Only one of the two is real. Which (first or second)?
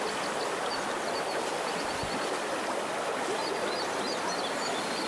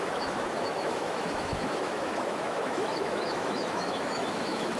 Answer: first